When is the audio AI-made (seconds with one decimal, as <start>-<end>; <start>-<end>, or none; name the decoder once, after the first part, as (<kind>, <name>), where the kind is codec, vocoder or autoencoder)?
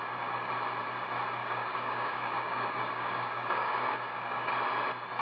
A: 1.4-4.5 (codec, DAC)